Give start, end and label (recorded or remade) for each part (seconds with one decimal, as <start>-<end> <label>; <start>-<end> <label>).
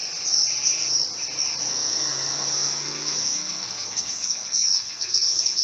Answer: 0.0-1.6 recorded; 1.6-5.6 remade